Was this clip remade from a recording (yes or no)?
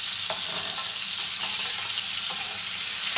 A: no